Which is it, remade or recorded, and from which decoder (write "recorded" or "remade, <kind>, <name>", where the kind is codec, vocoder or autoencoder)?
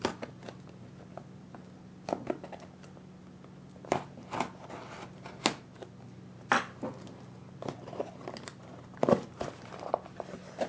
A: recorded